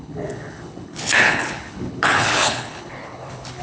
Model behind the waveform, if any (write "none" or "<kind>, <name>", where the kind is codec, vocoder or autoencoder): codec, HILCodec